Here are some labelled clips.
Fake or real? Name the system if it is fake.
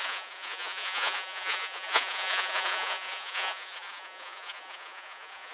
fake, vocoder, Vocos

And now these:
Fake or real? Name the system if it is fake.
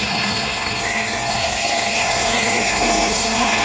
fake, codec, SNAC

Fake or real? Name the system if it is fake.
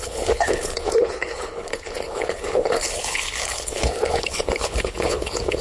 fake, codec, HILCodec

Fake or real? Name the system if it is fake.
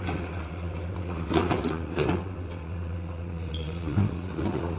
fake, vocoder, WaveNeXt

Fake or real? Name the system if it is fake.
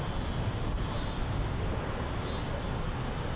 real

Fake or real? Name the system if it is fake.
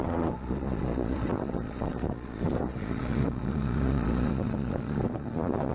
fake, vocoder, Vocos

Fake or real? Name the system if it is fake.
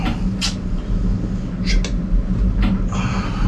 real